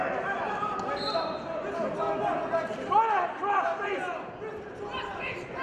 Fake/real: real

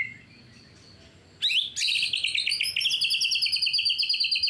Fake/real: real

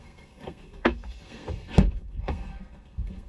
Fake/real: fake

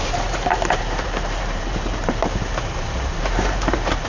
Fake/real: fake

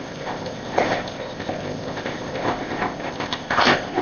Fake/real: fake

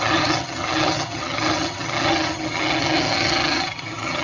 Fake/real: fake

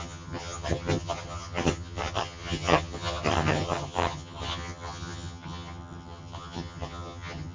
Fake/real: fake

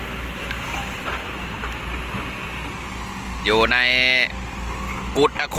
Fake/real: real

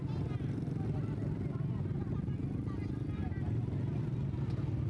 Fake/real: real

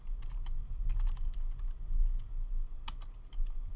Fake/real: real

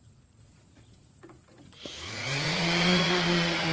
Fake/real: fake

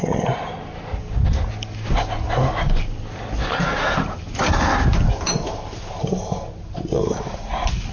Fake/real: real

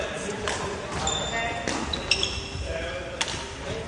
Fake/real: real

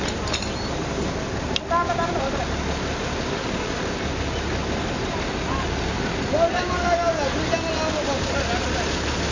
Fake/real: real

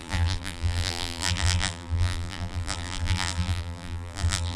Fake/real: fake